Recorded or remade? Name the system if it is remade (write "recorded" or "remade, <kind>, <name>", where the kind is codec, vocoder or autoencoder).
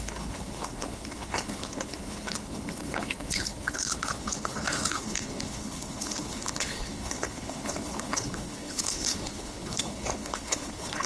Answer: remade, codec, HILCodec